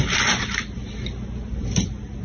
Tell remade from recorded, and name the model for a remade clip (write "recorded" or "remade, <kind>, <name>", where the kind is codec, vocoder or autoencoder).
recorded